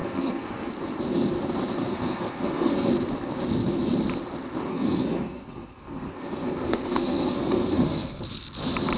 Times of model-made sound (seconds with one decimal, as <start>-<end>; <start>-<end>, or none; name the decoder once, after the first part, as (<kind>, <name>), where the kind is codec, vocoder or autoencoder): 0.0-0.7 (codec, SNAC); 1.8-2.9; 4.7-8.2